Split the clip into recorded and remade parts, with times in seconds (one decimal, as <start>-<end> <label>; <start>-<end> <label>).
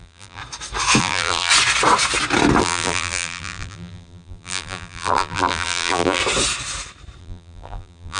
0.0-0.4 remade; 0.4-1.0 recorded; 1.0-1.5 remade; 1.5-2.6 recorded; 2.6-6.2 remade; 6.2-7.2 recorded; 7.2-8.2 remade